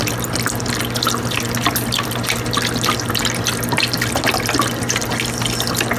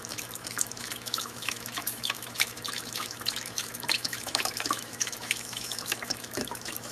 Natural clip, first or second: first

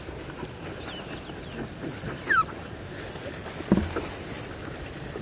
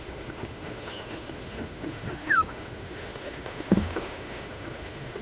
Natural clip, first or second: first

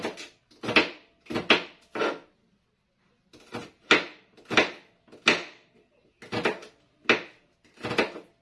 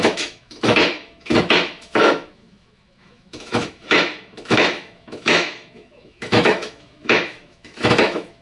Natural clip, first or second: first